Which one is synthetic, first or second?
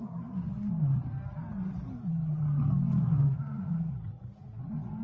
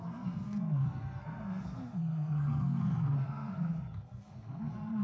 second